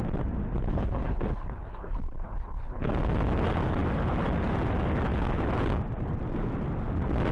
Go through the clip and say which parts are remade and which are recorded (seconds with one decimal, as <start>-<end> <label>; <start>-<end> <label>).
0.0-0.7 recorded; 0.7-2.9 remade; 2.9-7.3 recorded